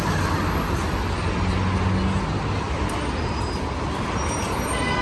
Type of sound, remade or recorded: recorded